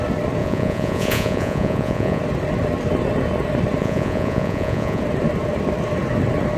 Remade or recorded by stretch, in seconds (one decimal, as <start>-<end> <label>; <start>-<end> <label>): 0.0-0.4 recorded; 0.4-2.2 remade; 2.2-3.8 recorded; 3.8-5.0 remade; 5.0-6.6 recorded